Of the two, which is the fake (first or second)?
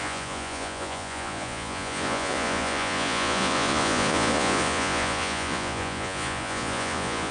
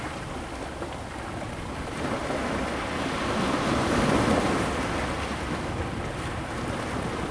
first